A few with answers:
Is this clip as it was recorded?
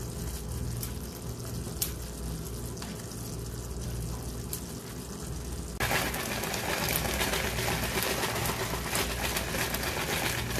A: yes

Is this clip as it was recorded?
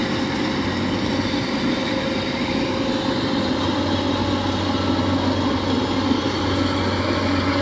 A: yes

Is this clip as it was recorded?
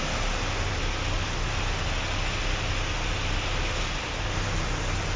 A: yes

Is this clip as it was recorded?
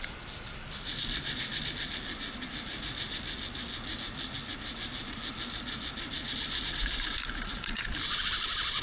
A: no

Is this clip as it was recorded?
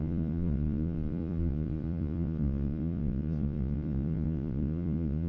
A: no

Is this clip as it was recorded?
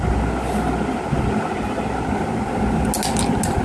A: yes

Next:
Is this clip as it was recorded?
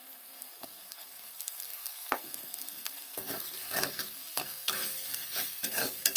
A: no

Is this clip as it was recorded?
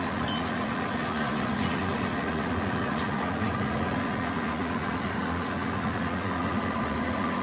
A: no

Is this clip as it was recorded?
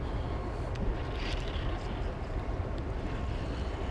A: yes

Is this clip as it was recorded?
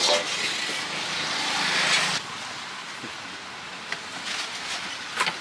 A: yes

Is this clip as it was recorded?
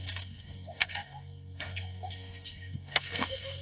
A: no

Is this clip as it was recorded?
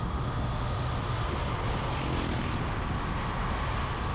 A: yes